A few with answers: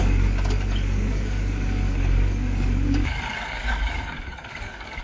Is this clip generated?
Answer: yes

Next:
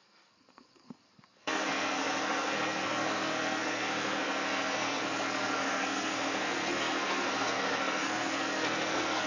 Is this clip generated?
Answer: yes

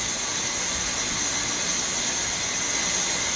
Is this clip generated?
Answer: no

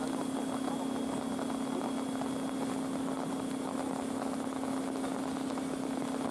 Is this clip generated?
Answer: no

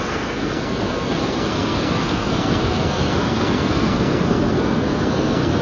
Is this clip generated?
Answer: yes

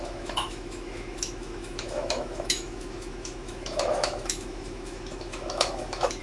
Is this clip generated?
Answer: yes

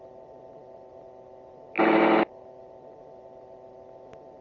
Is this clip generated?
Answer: no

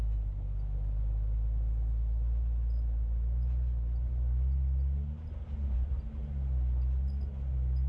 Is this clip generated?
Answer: no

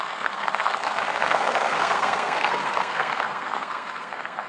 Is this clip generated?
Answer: yes